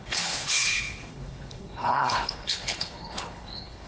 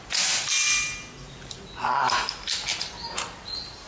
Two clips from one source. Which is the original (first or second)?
second